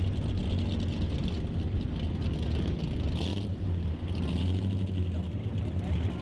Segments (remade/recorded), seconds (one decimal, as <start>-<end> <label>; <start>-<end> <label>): 0.0-6.2 recorded